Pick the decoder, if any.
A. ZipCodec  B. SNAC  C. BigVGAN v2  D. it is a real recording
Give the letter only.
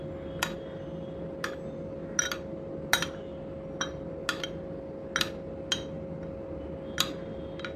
D